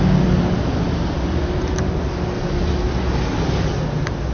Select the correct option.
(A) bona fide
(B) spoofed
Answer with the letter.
A